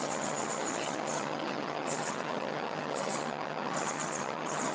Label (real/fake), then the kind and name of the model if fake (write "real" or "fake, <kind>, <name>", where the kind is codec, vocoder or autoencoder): fake, vocoder, HiFi-GAN